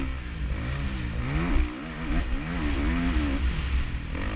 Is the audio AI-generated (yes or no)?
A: no